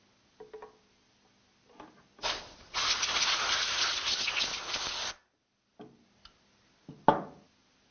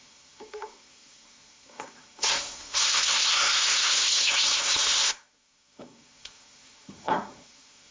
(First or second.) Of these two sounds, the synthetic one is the second